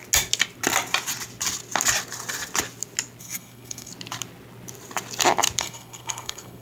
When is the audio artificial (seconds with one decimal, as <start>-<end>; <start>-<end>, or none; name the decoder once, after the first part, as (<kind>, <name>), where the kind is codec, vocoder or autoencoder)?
3.2-3.9 (codec, SNAC); 5.6-6.6